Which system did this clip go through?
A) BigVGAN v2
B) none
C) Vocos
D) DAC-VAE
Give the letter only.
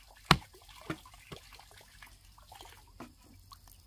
B